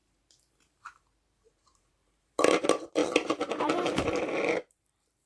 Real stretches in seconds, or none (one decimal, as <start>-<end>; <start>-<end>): none